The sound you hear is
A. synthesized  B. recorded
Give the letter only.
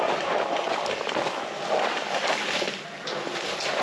B